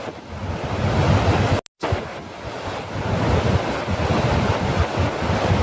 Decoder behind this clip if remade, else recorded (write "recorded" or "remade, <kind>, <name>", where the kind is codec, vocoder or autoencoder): recorded